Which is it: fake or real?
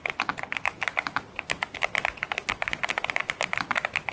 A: real